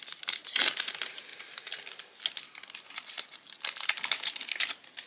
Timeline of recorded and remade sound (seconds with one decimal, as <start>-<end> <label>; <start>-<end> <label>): 0.0-0.4 recorded; 0.4-0.9 remade; 0.9-5.1 recorded